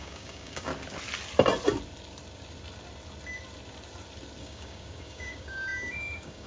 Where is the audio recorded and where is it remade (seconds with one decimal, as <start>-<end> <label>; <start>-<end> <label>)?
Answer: 0.0-0.7 remade; 0.7-4.4 recorded; 4.4-6.5 remade